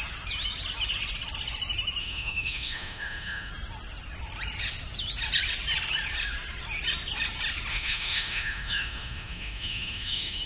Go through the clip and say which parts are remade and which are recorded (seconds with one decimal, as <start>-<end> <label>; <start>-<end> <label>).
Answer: 0.0-2.0 recorded; 2.0-3.5 remade; 3.5-7.7 recorded; 7.7-10.5 remade